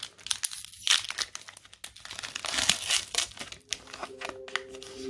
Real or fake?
real